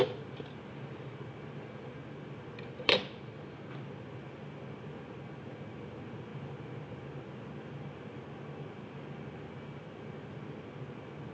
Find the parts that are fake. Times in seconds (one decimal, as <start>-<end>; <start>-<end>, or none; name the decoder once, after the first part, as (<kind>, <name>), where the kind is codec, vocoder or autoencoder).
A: none